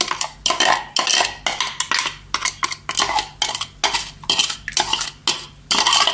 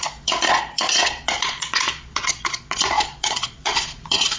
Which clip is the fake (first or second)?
second